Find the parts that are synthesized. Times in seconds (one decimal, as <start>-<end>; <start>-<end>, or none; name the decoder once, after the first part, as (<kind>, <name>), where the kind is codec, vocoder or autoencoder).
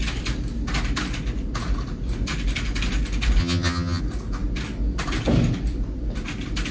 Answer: 3.4-4.0 (vocoder, HiFi-GAN)